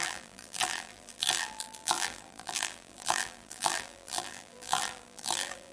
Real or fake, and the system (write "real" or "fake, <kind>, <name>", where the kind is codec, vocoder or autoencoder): fake, vocoder, BigVGAN v2